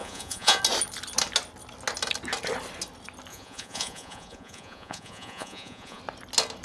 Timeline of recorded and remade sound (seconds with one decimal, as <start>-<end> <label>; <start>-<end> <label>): 0.0-0.6 remade; 0.6-3.3 recorded; 3.3-6.0 remade; 6.0-6.6 recorded